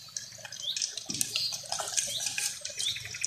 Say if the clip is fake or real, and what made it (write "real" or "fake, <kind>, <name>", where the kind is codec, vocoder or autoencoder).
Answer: real